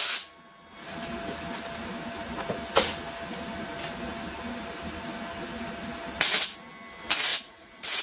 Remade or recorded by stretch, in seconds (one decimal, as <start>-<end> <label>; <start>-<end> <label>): 0.0-7.3 recorded; 7.3-8.0 remade